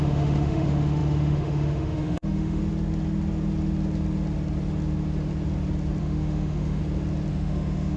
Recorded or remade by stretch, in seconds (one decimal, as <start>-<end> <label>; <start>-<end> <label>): 0.0-2.6 remade; 2.6-6.0 recorded; 6.0-6.8 remade; 6.8-7.3 recorded; 7.3-8.0 remade